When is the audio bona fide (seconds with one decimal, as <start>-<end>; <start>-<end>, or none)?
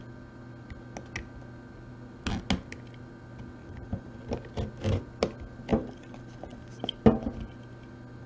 0.0-3.6; 4.2-5.7; 6.9-8.3